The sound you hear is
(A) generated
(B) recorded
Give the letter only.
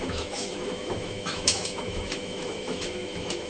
A